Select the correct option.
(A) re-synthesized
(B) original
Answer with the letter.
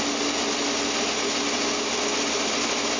B